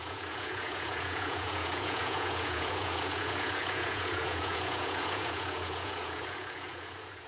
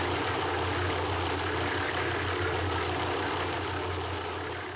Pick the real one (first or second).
second